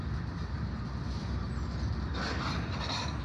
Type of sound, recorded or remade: recorded